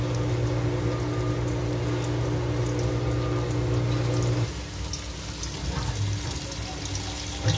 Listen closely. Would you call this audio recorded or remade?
recorded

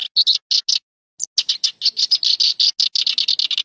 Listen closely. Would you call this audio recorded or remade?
recorded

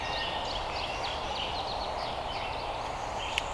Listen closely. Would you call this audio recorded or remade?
recorded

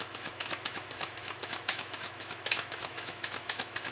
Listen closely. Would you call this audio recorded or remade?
remade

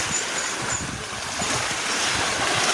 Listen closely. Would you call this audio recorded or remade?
recorded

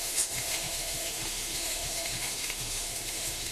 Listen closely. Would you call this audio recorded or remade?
remade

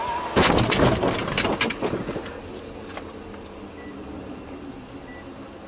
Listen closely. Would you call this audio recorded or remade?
recorded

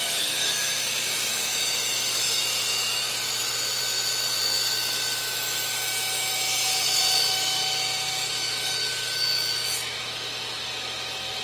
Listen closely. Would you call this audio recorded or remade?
remade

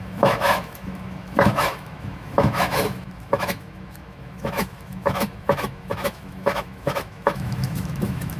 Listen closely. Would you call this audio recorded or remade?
remade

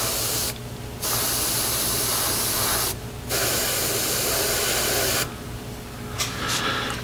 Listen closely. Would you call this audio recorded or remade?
recorded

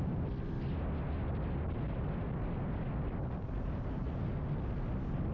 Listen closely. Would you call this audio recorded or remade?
recorded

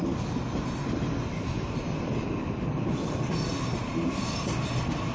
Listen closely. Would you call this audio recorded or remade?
recorded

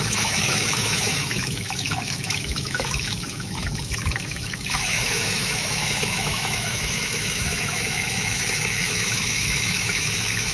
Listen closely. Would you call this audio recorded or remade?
remade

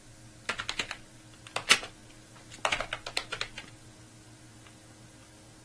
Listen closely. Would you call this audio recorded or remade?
recorded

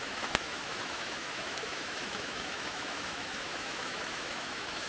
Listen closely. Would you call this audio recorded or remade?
remade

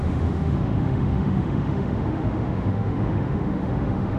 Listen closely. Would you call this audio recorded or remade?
remade